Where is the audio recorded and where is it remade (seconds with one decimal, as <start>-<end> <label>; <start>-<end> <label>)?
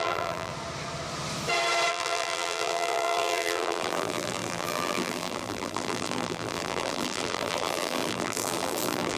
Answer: 0.0-0.5 remade; 0.5-1.9 recorded; 1.9-9.2 remade